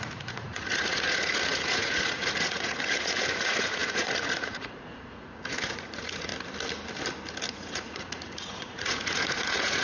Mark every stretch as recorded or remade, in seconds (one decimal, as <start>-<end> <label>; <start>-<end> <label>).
0.0-6.3 remade; 6.3-7.5 recorded; 7.5-9.8 remade